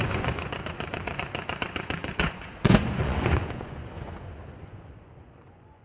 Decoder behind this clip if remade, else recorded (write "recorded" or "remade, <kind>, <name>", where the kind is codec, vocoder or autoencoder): remade, vocoder, Vocos